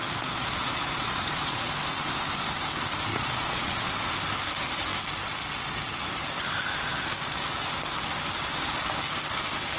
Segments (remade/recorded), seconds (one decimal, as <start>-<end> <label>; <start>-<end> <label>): 0.0-1.7 remade; 1.7-3.1 recorded; 3.1-3.9 remade; 3.9-9.8 recorded